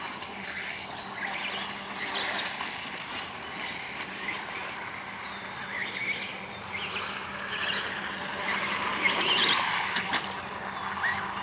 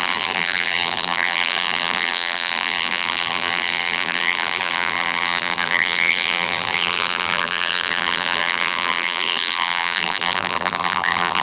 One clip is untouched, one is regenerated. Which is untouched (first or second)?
first